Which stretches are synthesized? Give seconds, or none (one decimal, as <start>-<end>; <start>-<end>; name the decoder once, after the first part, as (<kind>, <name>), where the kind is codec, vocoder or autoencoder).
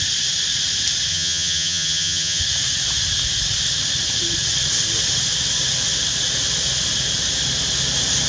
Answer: 1.1-2.4 (vocoder, HiFi-GAN)